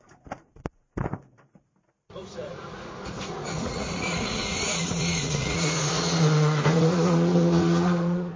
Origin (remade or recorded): remade